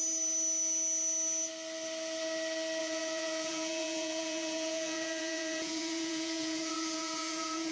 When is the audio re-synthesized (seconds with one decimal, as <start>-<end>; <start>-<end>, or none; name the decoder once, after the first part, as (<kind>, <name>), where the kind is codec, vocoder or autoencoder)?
2.8-7.7 (vocoder, Vocos)